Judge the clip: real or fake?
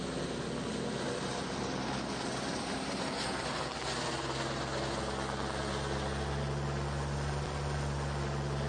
real